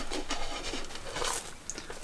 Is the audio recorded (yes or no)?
yes